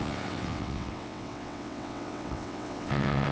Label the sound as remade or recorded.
remade